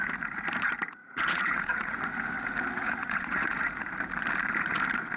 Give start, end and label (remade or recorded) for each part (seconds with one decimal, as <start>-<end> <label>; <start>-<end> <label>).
0.0-1.0 recorded; 1.0-2.0 remade; 2.0-2.7 recorded; 2.7-3.9 remade; 3.9-5.2 recorded

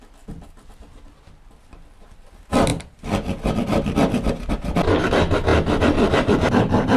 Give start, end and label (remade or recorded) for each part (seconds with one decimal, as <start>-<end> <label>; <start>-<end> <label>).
0.0-7.0 recorded

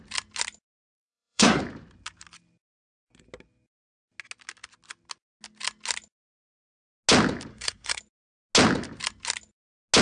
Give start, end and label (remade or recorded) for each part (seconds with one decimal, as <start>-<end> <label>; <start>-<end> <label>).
0.0-0.9 recorded; 0.9-1.6 remade; 1.6-7.5 recorded; 7.5-8.0 remade; 8.0-10.0 recorded

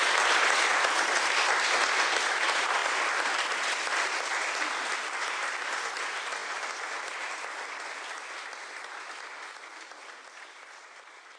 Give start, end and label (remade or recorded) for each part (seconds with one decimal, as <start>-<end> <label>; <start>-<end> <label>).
0.0-11.4 recorded

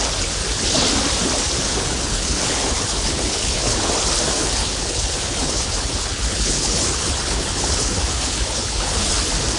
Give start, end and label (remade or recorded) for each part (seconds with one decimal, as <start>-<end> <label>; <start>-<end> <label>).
0.0-1.7 recorded; 1.7-3.9 remade; 3.9-4.4 recorded; 4.4-9.1 remade; 9.1-9.6 recorded